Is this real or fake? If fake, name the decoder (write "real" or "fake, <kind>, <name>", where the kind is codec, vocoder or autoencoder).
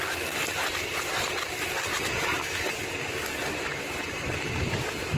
real